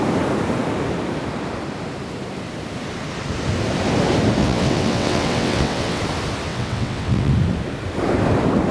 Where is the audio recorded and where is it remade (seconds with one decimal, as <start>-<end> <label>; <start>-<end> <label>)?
0.0-4.4 recorded; 4.4-6.0 remade; 6.0-6.5 recorded; 6.5-7.3 remade; 7.3-8.7 recorded